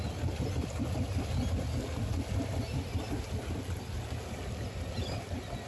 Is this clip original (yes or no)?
yes